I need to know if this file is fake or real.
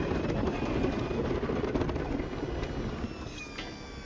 real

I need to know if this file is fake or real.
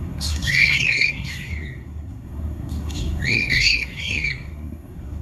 fake